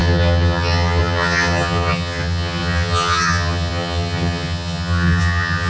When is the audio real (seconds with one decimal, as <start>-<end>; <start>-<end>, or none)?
none

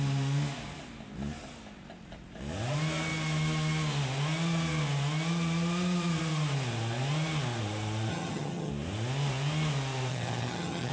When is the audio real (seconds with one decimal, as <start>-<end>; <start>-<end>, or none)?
0.0-8.1; 8.7-10.1

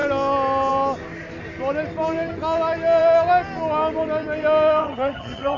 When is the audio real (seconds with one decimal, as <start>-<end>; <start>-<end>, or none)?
0.0-4.8